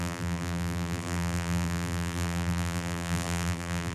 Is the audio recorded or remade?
remade